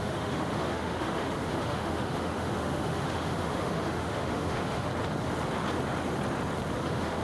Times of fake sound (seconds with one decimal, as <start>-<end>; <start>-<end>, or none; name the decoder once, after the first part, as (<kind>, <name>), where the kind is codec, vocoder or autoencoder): 0.0-4.9 (autoencoder, DAC-VAE); 6.7-7.2